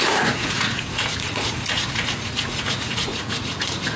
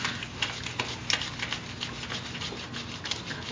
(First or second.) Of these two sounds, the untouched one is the second